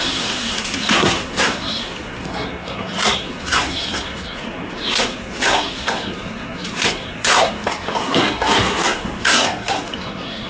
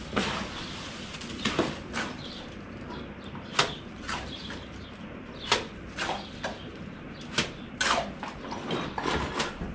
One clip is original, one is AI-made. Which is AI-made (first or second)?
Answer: first